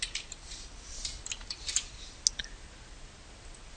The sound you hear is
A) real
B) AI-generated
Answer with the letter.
A